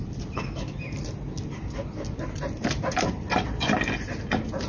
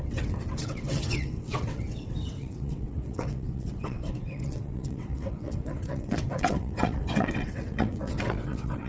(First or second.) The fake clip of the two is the second